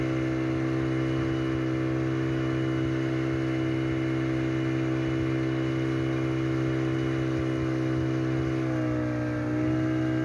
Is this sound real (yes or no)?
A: yes